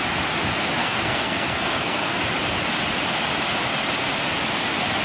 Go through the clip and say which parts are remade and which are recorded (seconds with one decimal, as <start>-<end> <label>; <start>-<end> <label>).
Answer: 0.0-0.8 recorded; 0.8-2.2 remade; 2.2-5.0 recorded